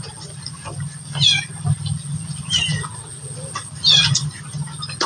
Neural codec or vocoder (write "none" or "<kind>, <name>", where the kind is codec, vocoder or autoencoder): none